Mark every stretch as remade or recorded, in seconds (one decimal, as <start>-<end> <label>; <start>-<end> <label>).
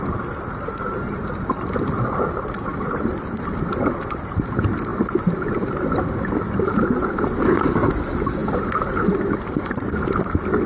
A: 0.0-10.7 recorded